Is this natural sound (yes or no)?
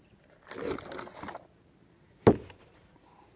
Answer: yes